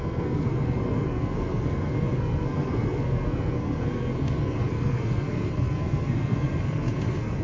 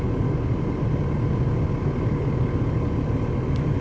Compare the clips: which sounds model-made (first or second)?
first